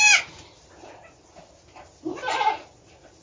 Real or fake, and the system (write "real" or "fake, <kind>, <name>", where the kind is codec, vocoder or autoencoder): real